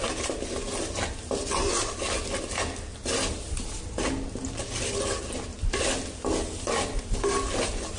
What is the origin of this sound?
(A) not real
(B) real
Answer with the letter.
B